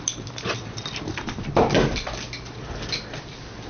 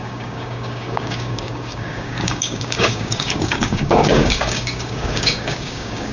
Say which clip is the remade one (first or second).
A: second